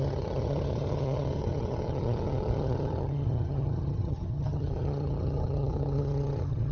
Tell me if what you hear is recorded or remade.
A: remade